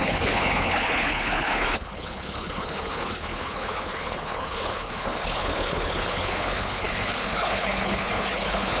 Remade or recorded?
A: remade